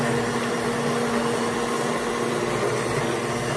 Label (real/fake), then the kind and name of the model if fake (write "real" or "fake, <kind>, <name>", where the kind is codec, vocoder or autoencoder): real